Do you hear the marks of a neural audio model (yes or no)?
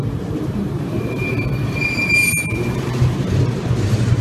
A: yes